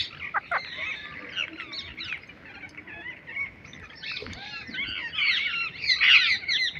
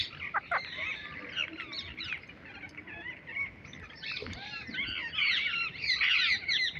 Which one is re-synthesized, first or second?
second